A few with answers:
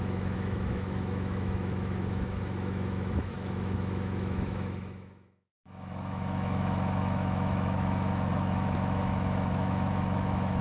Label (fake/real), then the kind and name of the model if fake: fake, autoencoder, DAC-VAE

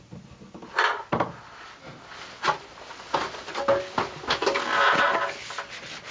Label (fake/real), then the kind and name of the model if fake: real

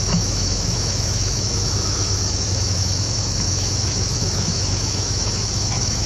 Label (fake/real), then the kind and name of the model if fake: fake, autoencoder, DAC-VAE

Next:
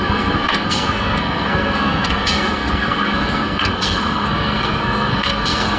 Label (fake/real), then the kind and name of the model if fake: fake, codec, SNAC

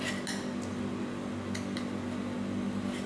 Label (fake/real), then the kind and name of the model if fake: real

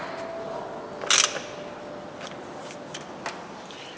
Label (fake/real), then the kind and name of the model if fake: real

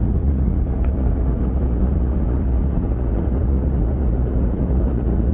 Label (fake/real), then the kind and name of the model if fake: fake, vocoder, Vocos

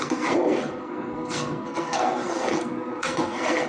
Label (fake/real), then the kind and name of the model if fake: fake, codec, SNAC